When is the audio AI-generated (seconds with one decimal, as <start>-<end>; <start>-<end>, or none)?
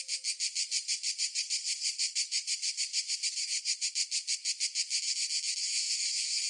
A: 0.8-3.9